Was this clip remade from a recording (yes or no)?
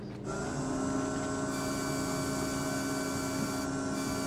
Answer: no